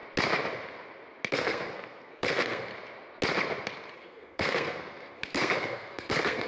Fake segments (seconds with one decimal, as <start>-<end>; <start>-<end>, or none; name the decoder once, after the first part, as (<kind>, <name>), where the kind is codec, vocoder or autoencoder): 1.3-2.7 (codec, SNAC); 3.9-6.5